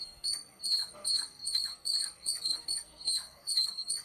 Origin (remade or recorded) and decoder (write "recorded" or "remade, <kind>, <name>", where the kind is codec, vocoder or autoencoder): remade, codec, SNAC